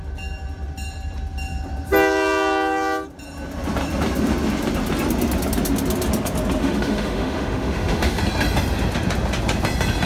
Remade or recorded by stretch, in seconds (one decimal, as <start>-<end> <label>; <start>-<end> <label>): 0.0-6.6 recorded; 6.6-8.2 remade; 8.2-10.1 recorded